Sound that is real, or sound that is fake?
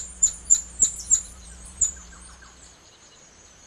fake